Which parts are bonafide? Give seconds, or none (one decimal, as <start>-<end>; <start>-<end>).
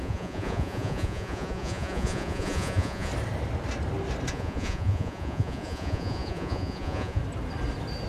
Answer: 3.1-4.3; 7.2-8.1